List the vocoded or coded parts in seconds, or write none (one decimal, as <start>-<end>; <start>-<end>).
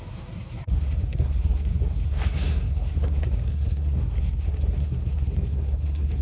0.0-6.2